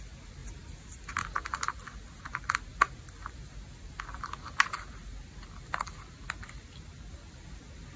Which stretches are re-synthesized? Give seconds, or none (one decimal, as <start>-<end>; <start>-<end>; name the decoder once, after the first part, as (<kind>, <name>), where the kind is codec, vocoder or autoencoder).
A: none